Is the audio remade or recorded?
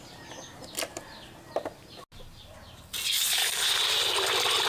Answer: recorded